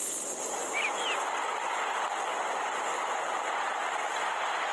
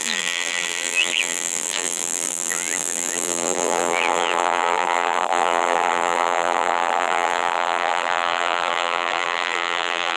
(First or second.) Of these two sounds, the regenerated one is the second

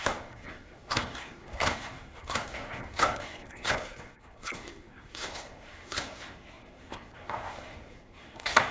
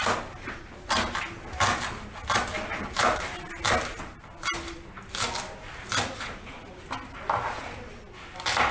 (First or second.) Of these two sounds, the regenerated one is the first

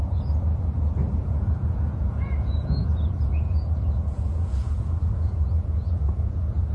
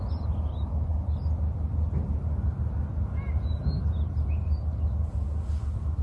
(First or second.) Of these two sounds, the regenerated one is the first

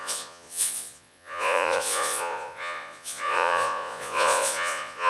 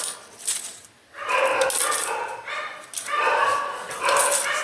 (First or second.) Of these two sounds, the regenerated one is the first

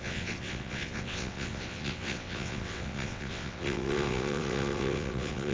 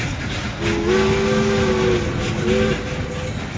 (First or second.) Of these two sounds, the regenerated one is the first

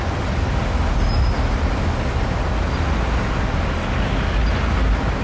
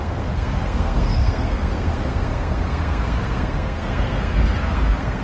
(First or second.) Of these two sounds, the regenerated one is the second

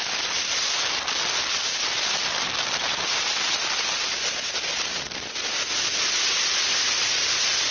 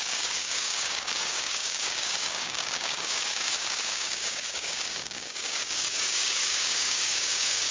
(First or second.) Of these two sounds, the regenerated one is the second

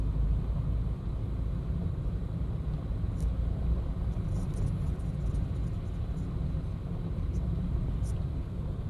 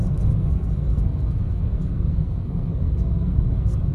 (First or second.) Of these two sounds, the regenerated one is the second